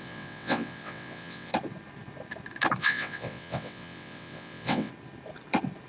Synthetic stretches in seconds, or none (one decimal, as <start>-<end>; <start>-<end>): 0.0-1.5; 2.8-4.9